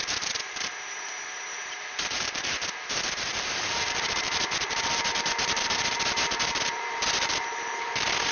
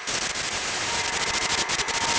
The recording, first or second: second